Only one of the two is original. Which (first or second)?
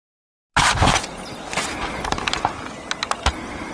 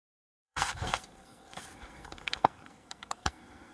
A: first